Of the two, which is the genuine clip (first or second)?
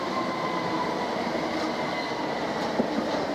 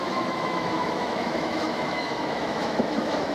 first